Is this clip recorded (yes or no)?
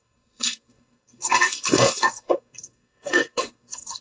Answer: no